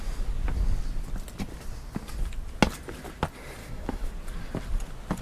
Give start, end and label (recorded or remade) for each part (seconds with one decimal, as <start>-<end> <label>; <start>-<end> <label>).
0.0-3.6 recorded; 3.6-4.1 remade; 4.1-5.2 recorded